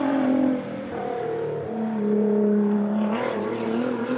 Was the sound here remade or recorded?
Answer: remade